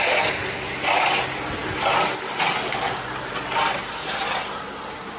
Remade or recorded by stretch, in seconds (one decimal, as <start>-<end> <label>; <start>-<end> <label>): 0.0-5.2 recorded